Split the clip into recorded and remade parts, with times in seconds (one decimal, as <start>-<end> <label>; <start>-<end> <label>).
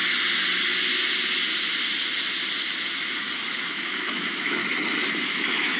0.0-3.5 recorded; 3.5-4.6 remade; 4.6-5.2 recorded; 5.2-5.8 remade